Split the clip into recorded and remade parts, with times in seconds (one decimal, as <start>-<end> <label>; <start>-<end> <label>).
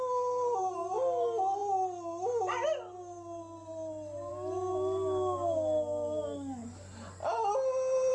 0.0-8.1 recorded